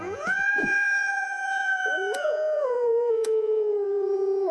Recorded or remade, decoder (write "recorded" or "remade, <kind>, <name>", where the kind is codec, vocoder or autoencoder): remade, vocoder, Vocos